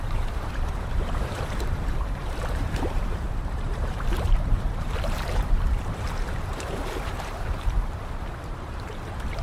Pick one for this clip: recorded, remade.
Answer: remade